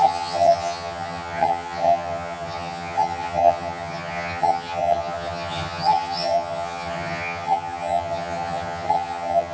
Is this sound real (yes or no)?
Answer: no